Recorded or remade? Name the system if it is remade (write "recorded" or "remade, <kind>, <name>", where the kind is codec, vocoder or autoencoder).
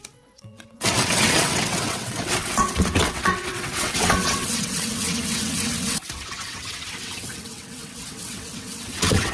remade, vocoder, WaveNeXt